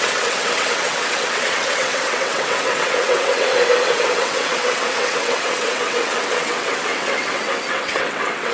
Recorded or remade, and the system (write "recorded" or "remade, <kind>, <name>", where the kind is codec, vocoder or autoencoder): remade, vocoder, WaveNeXt